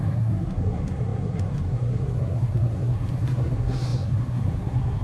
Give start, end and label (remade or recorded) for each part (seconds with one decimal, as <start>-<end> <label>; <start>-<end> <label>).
0.0-5.0 remade